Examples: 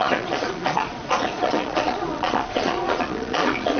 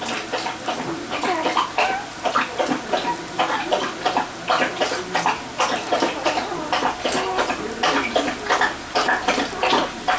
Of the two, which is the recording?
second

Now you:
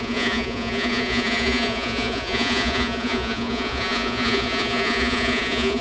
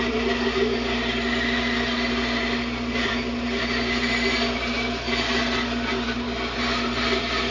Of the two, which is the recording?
second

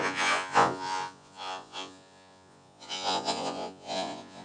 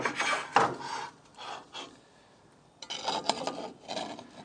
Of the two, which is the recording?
second